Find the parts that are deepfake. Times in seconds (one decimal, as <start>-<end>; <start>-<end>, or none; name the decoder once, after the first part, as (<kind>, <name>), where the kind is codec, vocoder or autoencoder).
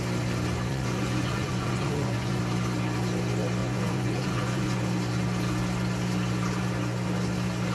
0.7-2.4 (vocoder, Vocos); 3.6-4.8